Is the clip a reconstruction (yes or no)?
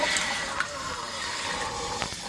no